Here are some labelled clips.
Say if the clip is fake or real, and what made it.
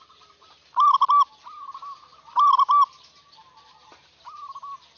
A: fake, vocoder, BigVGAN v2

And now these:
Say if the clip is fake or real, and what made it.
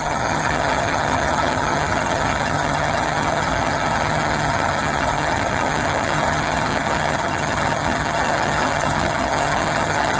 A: fake, vocoder, HiFi-GAN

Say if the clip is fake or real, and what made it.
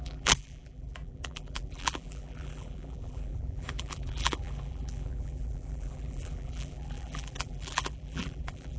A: fake, vocoder, BigVGAN v2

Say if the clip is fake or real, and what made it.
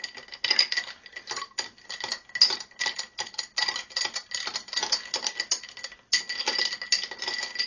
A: real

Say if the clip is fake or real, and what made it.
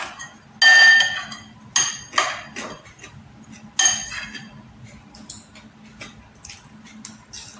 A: real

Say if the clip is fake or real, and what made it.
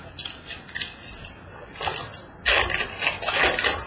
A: real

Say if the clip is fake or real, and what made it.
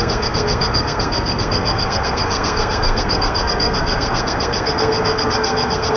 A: fake, codec, SNAC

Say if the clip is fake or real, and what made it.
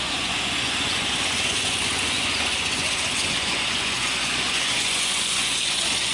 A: fake, vocoder, Vocos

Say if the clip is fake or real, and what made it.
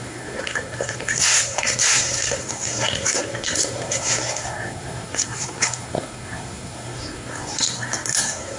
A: fake, codec, SNAC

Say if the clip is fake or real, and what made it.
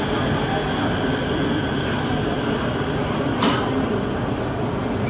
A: real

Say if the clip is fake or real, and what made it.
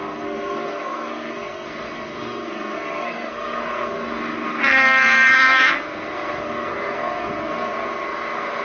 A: fake, codec, SNAC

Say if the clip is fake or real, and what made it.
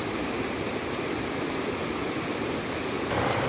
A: real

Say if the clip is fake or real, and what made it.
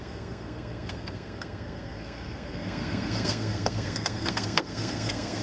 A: fake, codec, SNAC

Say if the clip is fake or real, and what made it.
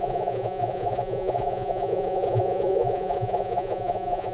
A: fake, vocoder, Vocos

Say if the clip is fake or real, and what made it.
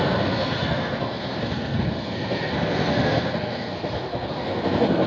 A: fake, codec, SNAC